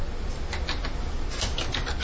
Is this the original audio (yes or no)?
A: yes